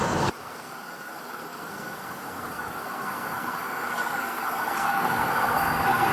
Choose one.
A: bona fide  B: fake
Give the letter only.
B